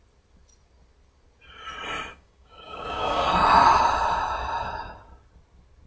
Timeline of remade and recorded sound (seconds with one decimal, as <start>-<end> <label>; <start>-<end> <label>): 0.0-2.1 recorded; 2.1-3.3 remade; 3.3-5.9 recorded